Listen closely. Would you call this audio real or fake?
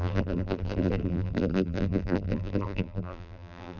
fake